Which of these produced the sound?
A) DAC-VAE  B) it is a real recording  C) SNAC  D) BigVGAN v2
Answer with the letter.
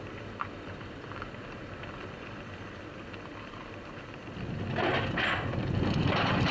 B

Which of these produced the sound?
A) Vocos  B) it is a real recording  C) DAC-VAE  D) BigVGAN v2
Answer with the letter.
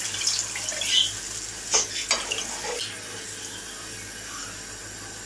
B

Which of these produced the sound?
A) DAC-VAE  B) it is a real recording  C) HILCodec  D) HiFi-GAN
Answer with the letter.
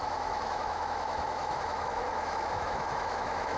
A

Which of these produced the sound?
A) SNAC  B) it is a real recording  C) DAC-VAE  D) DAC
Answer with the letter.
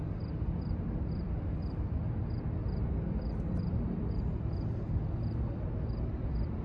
B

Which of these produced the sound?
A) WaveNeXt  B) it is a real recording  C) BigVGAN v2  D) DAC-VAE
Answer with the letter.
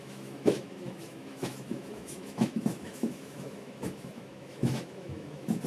D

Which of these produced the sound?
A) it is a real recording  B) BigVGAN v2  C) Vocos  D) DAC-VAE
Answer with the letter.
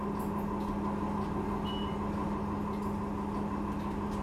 A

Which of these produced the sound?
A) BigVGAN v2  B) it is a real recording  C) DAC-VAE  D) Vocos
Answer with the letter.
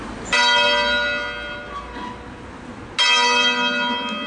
B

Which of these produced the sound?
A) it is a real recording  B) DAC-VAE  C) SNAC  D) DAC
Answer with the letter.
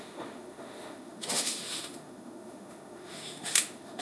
B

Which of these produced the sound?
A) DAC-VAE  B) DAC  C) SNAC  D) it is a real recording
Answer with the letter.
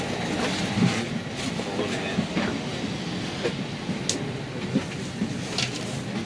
D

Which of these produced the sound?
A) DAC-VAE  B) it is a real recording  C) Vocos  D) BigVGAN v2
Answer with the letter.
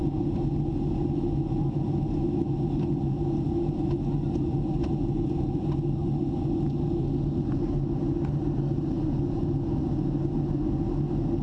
B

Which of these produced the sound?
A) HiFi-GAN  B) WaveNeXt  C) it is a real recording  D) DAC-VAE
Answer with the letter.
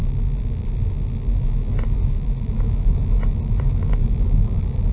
C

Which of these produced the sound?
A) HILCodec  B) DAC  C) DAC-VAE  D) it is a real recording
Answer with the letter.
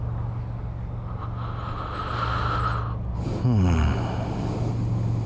D